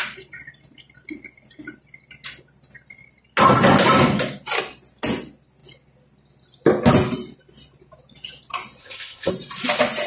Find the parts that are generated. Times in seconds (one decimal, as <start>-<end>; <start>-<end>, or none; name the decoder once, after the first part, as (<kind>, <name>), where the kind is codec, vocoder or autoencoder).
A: 8.8-9.3 (codec, ZipCodec)